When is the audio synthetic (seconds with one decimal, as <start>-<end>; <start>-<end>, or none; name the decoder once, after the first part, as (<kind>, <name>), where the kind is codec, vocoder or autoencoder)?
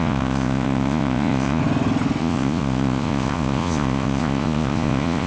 0.0-1.6 (vocoder, Vocos); 2.2-5.3